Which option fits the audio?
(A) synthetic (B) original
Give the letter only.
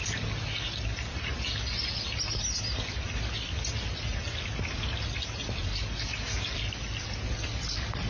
B